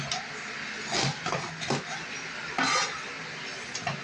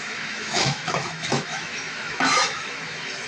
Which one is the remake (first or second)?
second